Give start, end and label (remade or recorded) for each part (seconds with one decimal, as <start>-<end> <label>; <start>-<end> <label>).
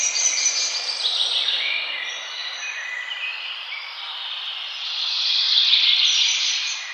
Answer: 0.0-2.4 recorded; 2.4-6.5 remade; 6.5-6.9 recorded